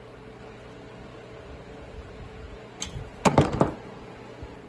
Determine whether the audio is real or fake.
real